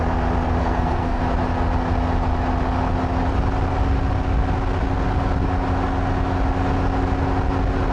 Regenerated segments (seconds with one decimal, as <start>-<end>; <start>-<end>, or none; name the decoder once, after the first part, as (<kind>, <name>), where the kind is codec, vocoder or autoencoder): 0.6-1.2 (codec, SNAC)